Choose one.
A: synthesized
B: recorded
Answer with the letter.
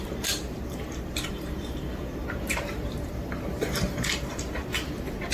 A